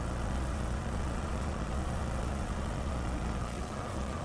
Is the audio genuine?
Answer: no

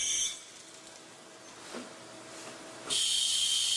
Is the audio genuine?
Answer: yes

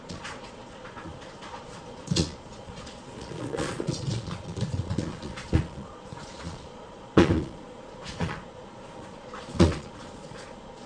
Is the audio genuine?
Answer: no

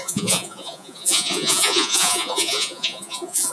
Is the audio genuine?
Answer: no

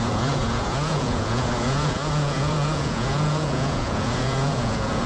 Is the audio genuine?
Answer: no